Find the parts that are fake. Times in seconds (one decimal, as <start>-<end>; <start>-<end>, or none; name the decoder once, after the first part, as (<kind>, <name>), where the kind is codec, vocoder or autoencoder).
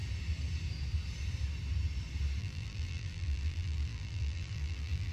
2.4-5.1 (vocoder, BigVGAN v2)